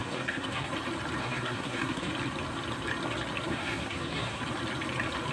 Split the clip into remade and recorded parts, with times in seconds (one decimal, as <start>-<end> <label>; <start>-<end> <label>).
0.0-0.7 remade; 0.7-1.2 recorded; 1.2-2.1 remade; 2.1-3.5 recorded; 3.5-4.4 remade; 4.4-5.3 recorded